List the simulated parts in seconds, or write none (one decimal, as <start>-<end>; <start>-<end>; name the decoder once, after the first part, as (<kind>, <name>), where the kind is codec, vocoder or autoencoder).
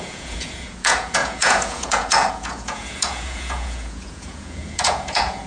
0.0-5.5 (vocoder, Vocos)